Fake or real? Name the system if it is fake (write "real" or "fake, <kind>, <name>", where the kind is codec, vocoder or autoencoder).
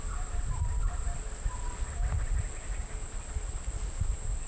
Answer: real